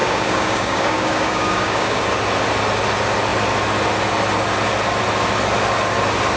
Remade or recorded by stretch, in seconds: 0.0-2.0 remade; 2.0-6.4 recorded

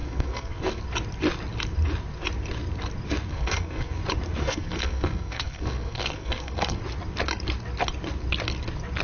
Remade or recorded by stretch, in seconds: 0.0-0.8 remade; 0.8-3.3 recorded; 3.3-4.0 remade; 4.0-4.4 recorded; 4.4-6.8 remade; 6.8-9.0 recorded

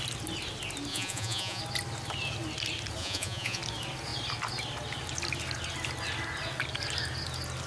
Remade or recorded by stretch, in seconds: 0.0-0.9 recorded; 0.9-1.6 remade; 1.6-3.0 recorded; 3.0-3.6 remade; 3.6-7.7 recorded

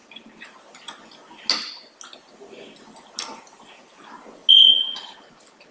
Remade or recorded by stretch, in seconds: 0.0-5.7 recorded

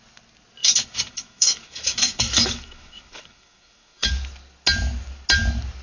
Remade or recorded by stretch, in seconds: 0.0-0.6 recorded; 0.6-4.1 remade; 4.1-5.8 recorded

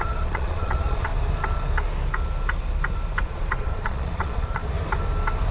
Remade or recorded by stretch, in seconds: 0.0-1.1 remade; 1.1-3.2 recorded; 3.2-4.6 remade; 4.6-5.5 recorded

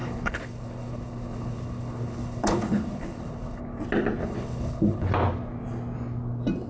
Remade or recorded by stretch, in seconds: 0.0-3.6 remade; 3.6-4.2 recorded; 4.2-5.1 remade; 5.1-6.7 recorded